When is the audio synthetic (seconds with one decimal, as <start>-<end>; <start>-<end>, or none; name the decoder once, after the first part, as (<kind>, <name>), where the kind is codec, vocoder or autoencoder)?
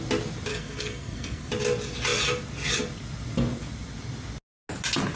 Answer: 0.5-1.5 (codec, SNAC)